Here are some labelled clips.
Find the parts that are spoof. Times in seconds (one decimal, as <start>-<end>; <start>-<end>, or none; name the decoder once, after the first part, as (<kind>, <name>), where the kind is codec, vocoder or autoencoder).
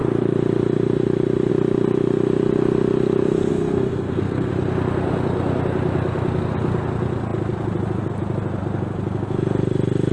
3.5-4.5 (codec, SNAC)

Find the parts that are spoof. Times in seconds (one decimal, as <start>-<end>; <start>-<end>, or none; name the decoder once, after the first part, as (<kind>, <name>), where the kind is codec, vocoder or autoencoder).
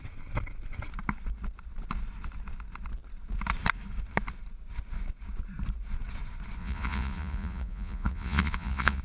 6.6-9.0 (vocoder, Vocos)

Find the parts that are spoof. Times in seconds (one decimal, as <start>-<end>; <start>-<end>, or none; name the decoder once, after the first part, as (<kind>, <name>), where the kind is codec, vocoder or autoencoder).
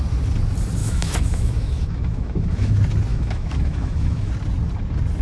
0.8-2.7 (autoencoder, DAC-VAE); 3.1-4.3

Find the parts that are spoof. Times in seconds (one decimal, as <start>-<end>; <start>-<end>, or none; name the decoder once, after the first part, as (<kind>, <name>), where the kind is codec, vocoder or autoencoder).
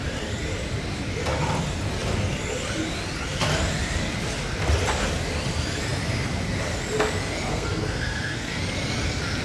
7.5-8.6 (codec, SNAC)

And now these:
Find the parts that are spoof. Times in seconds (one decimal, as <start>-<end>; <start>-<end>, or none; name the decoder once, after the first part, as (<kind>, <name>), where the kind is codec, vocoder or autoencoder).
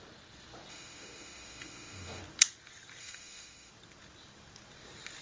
0.7-2.2 (autoencoder, DAC-VAE); 3.0-3.7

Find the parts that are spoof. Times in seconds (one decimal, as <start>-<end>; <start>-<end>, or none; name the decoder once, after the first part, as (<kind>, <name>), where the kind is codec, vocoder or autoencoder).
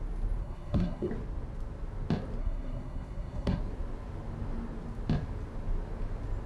0.4-1.1 (codec, SNAC); 2.4-3.6